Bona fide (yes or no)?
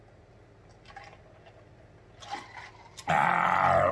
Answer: yes